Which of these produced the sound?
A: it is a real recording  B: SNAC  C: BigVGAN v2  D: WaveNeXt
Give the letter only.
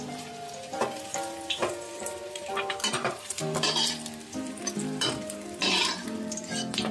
C